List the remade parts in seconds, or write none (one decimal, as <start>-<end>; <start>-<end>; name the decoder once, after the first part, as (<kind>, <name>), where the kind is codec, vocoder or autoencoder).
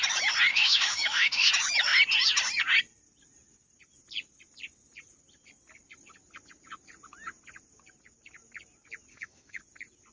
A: 0.5-1.5 (autoencoder, DAC-VAE); 9.1-9.6